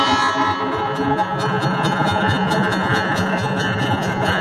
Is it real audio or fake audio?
fake